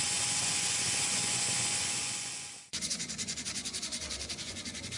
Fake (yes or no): yes